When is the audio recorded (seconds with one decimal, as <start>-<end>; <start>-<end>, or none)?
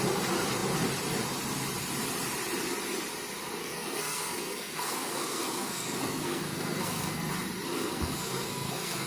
0.0-3.6; 7.3-7.7